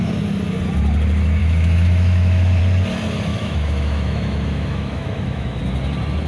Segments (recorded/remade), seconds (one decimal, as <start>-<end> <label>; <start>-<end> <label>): 0.0-1.4 recorded; 1.4-2.6 remade; 2.6-3.3 recorded; 3.3-5.6 remade; 5.6-6.3 recorded